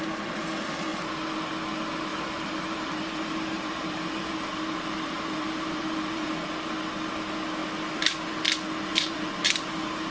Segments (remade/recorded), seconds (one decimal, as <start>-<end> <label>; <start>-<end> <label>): 0.0-2.1 recorded; 2.1-6.3 remade; 6.3-8.9 recorded; 8.9-10.1 remade